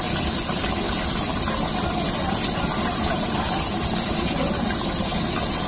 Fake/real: real